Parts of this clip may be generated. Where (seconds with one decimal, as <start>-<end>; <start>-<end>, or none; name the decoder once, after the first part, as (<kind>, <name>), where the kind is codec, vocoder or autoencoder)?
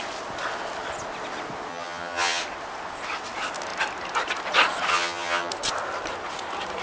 1.7-2.4 (vocoder, HiFi-GAN); 4.9-5.5